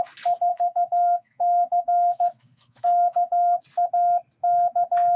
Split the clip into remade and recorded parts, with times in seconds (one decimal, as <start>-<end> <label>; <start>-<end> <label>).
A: 0.0-0.5 recorded; 0.5-3.6 remade; 3.6-5.2 recorded